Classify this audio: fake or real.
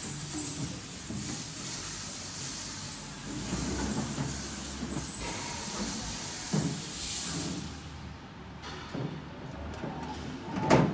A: real